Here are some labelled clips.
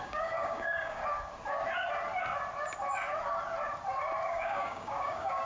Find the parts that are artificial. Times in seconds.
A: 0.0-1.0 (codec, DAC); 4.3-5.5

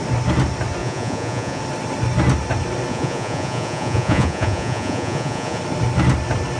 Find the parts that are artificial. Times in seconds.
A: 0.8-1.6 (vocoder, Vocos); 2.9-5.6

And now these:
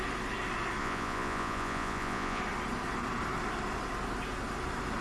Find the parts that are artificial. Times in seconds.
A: 0.8-2.4 (vocoder, Vocos)